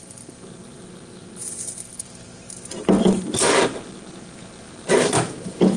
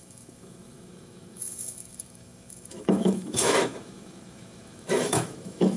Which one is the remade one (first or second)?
second